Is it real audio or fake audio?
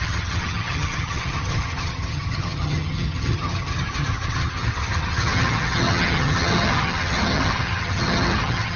fake